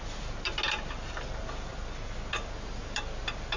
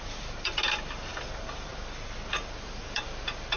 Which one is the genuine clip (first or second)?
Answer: first